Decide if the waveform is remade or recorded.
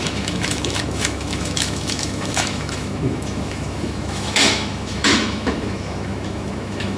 remade